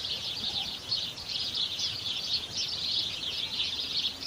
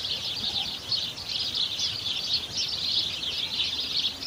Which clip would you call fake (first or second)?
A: first